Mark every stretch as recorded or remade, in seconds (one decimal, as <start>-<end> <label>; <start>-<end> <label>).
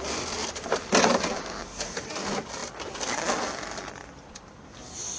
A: 0.0-0.4 recorded; 0.4-1.6 remade; 1.6-5.2 recorded